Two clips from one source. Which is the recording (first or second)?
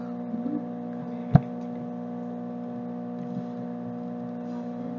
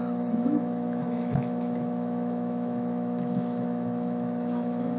first